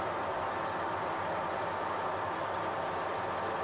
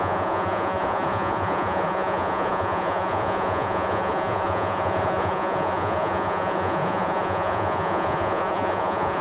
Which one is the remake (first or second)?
second